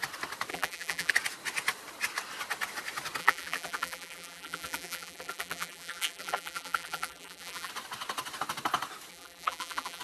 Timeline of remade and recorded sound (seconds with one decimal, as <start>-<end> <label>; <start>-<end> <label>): 0.0-0.5 recorded; 0.5-1.1 remade; 1.1-3.2 recorded; 3.2-7.7 remade; 7.7-9.1 recorded; 9.1-10.0 remade